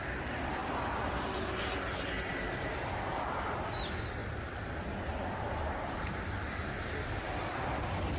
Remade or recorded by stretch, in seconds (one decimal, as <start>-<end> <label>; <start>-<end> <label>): 0.0-8.2 recorded